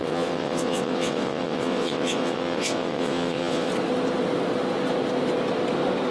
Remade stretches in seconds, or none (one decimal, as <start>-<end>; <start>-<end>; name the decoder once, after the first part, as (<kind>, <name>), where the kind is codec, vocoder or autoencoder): 0.0-3.7 (vocoder, WaveNeXt)